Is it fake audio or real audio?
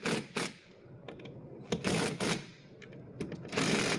real